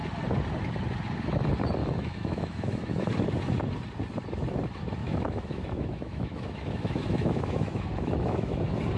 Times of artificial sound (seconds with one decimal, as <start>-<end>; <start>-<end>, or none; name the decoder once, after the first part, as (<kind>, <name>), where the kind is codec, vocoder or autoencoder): 1.8-3.1 (autoencoder, DAC-VAE); 5.0-8.6